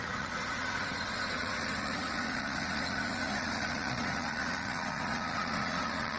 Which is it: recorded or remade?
remade